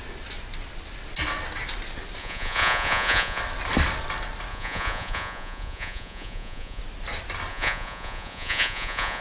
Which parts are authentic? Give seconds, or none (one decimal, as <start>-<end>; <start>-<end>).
0.0-2.2; 3.4-4.5; 6.8-7.5